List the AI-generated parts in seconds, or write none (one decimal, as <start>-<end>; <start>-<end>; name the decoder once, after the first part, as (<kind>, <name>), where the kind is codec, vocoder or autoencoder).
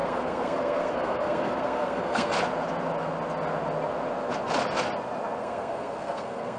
0.0-2.3 (codec, SNAC); 5.4-6.6